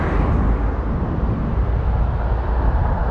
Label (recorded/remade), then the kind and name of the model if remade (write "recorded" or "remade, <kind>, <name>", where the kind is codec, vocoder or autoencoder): recorded